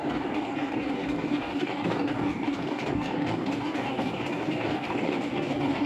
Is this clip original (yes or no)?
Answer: no